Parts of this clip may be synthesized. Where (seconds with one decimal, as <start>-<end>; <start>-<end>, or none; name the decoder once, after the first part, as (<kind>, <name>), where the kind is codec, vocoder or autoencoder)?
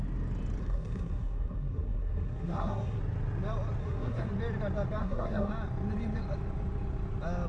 0.6-3.0 (codec, SNAC); 3.8-4.3; 5.0-5.5